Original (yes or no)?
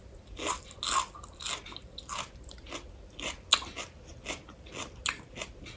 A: yes